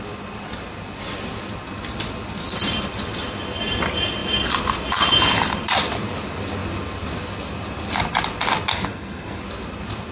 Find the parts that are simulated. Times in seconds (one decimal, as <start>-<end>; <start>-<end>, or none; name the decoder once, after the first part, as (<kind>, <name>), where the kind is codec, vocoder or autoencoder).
8.7-9.4 (codec, SNAC)